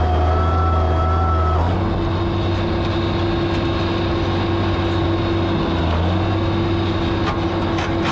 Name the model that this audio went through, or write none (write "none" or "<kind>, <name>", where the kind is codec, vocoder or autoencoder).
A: none